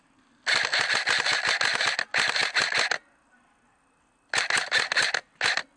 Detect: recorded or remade recorded